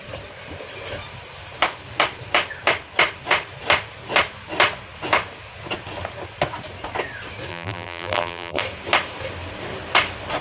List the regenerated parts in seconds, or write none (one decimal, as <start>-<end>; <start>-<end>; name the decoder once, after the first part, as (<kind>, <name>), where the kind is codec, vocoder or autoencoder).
7.5-8.6 (vocoder, BigVGAN v2)